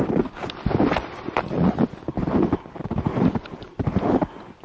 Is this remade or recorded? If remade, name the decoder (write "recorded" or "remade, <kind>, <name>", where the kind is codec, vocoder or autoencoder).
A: recorded